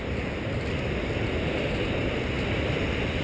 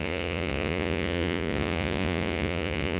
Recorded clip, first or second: first